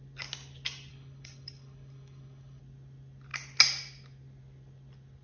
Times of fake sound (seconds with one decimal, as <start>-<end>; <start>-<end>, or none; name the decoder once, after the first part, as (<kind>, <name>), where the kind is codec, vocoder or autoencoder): 0.9-2.6 (codec, HILCodec)